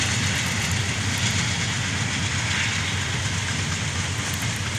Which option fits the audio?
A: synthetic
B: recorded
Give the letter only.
B